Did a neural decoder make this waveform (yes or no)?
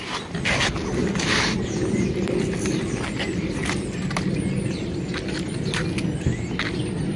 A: no